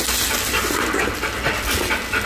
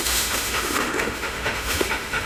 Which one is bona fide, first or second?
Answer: first